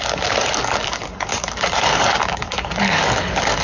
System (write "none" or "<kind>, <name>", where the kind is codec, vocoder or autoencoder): codec, DAC